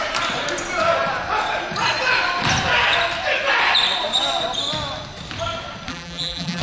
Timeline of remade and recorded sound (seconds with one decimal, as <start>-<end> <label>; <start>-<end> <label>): 0.0-5.9 recorded; 5.9-6.6 remade